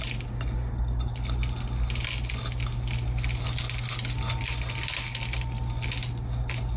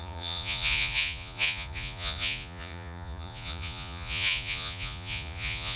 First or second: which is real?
first